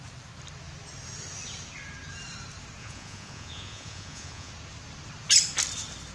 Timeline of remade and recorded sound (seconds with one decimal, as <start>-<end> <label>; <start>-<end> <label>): 0.0-2.8 recorded; 2.8-4.5 remade; 4.5-6.1 recorded